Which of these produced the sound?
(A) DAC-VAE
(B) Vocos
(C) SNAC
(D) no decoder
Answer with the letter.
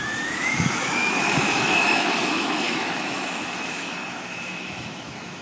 A